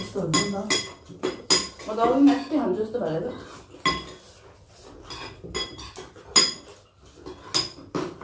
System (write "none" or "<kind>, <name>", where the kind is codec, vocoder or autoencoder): none